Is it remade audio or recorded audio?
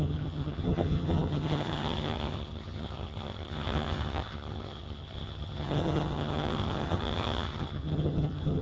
remade